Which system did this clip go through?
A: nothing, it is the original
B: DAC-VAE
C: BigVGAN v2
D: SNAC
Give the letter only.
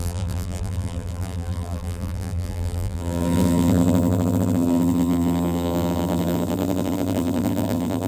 C